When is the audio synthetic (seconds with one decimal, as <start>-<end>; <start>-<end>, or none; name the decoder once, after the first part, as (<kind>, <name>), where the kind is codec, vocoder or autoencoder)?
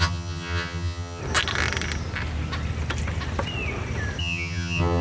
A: 0.0-1.2 (vocoder, HiFi-GAN); 4.2-5.0